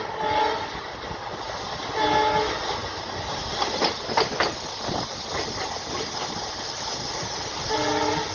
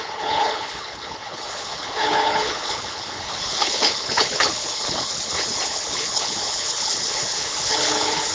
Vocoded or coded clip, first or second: second